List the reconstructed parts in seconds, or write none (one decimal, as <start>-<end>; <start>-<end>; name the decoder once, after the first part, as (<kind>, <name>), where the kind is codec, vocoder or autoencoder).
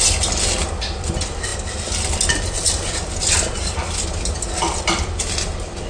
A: none